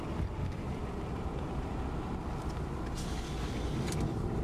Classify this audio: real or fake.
fake